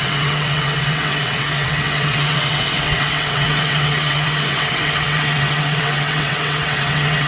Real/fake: fake